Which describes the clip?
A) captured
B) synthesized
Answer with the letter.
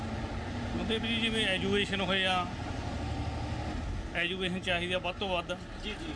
A